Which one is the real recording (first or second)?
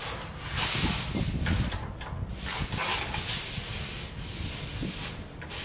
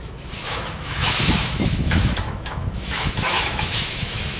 first